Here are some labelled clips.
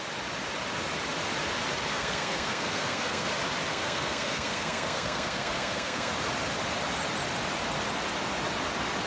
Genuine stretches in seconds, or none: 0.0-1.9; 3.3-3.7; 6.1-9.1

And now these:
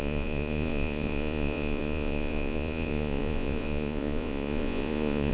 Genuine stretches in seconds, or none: none

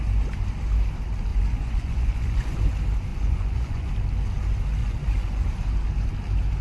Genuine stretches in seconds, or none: 0.0-1.3; 2.6-3.1; 3.9-4.8; 5.5-6.6

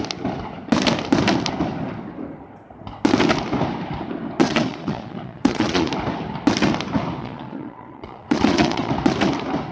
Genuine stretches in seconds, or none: 0.0-4.4; 5.9-7.2; 8.9-9.7

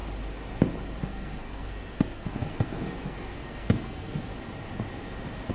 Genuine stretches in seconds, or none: 0.0-1.0; 4.3-5.5

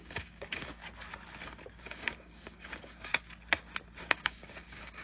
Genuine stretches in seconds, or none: 0.8-1.8; 3.1-4.0